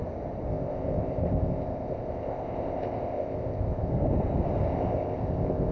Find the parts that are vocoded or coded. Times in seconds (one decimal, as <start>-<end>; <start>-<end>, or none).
0.5-3.9; 4.7-5.7